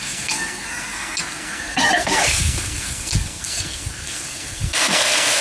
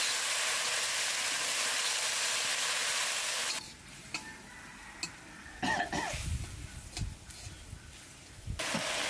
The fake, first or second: first